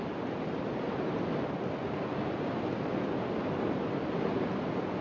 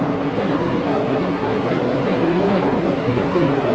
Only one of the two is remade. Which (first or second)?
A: second